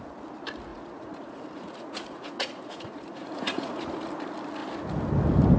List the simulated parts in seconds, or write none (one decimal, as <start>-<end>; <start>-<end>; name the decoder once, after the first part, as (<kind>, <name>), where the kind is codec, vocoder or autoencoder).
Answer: 0.7-4.1 (vocoder, Vocos)